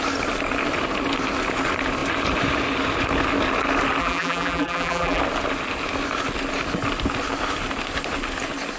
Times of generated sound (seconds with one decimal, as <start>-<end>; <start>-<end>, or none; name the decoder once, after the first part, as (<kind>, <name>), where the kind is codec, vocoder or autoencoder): 4.0-5.2 (vocoder, BigVGAN v2)